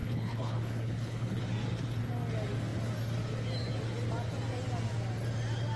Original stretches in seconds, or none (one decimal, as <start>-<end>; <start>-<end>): 1.4-5.8